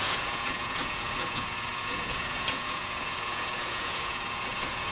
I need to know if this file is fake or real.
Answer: fake